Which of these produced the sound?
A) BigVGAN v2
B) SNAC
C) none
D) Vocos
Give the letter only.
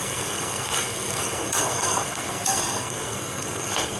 B